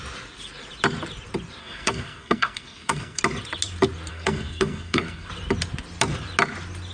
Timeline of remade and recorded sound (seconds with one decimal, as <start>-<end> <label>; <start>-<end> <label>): 0.0-1.6 recorded; 1.6-3.2 remade; 3.2-4.1 recorded; 4.1-5.3 remade; 5.3-6.9 recorded